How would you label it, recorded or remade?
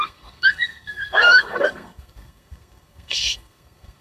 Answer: remade